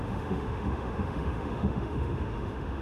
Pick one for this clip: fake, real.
fake